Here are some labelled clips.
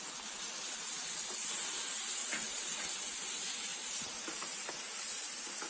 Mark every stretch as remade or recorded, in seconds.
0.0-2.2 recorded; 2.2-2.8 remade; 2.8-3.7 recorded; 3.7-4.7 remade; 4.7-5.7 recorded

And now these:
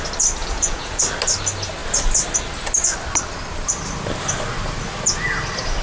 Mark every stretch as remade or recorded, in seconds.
0.0-0.4 recorded; 0.4-1.0 remade; 1.0-5.8 recorded

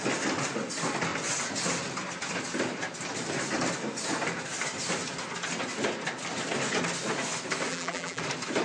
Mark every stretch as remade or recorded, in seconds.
0.0-7.7 recorded; 7.7-8.2 remade; 8.2-8.6 recorded

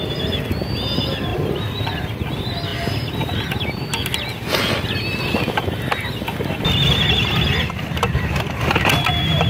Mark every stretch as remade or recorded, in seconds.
0.0-1.3 recorded; 1.3-2.3 remade; 2.3-2.7 recorded; 2.7-3.8 remade; 3.8-4.3 recorded; 4.3-8.7 remade; 8.7-9.5 recorded

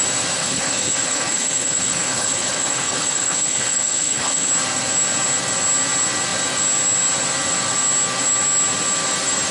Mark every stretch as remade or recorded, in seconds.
0.0-0.4 recorded; 0.4-4.5 remade; 4.5-9.5 recorded

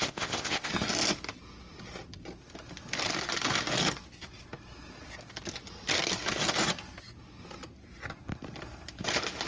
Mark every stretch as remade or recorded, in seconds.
0.0-0.7 remade; 0.7-9.5 recorded